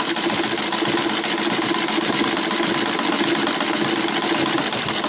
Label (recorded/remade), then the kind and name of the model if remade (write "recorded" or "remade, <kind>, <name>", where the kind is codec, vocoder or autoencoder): recorded